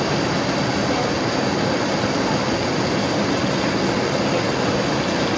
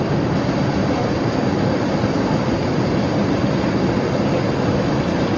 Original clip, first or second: first